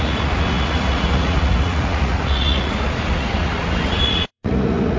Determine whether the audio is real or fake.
fake